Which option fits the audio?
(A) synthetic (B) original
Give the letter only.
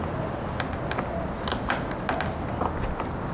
B